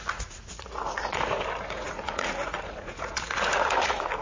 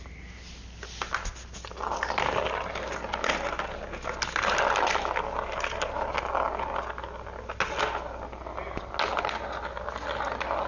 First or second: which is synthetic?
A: first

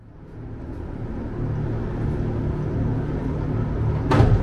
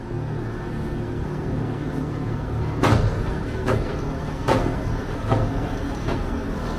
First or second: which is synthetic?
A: second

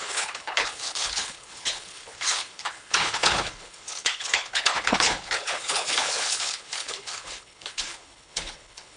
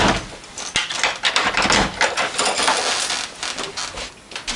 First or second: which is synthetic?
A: first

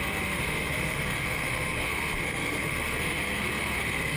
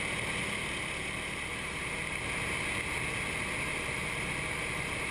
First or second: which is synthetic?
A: first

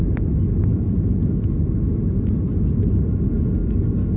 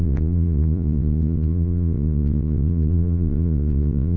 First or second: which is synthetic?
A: second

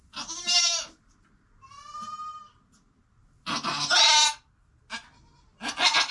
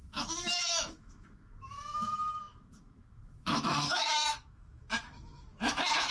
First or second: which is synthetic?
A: second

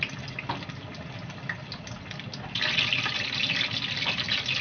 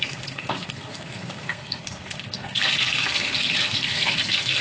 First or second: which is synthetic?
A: second